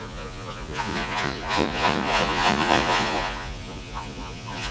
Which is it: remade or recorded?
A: remade